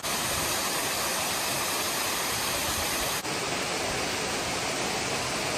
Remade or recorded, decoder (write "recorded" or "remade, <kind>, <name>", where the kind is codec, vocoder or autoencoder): recorded